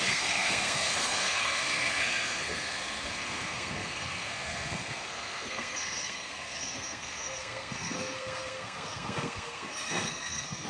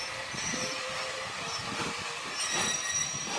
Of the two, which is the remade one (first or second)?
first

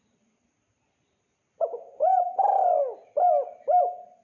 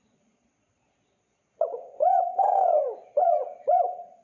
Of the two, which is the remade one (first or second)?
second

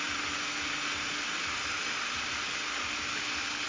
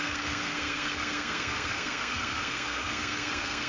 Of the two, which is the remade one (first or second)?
second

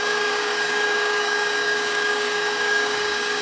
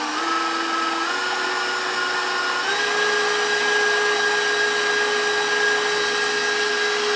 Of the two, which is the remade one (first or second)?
first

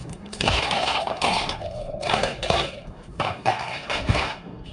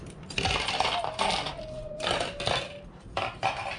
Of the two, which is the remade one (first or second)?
first